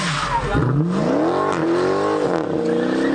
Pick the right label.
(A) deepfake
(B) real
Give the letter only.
B